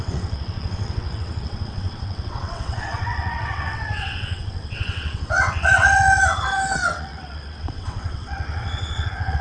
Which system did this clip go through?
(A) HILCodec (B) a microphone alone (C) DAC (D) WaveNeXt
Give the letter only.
D